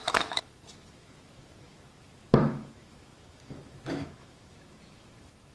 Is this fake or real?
fake